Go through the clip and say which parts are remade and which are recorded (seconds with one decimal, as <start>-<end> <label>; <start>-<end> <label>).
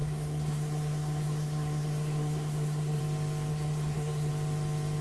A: 0.0-3.0 remade; 3.0-3.5 recorded; 3.5-4.3 remade; 4.3-5.0 recorded